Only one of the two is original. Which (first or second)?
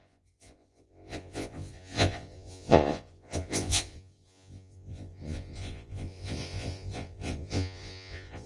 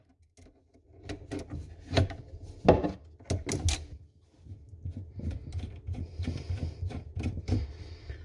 second